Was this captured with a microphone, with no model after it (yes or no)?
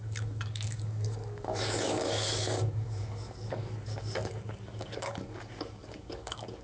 no